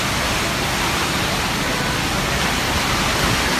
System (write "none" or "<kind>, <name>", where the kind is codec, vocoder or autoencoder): none